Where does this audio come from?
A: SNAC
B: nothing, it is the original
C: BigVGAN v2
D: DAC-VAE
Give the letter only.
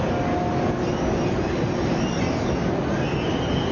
B